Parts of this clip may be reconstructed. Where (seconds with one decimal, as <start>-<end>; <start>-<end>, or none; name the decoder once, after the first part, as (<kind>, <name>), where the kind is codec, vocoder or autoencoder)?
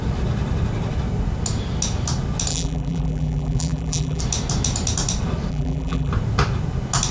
2.5-4.2 (vocoder, BigVGAN v2); 5.5-6.1